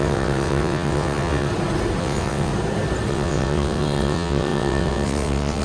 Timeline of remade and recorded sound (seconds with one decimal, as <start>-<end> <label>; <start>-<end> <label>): 0.0-1.5 remade; 1.5-2.0 recorded; 2.0-2.5 remade; 2.5-3.1 recorded; 3.1-5.6 remade